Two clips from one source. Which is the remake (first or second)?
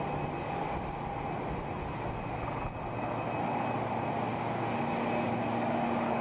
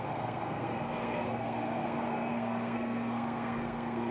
second